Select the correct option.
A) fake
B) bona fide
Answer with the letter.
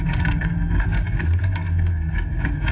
A